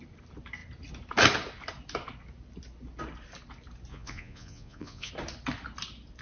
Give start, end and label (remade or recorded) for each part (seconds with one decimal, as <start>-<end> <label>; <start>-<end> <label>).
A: 0.0-3.9 recorded; 3.9-5.1 remade; 5.1-6.2 recorded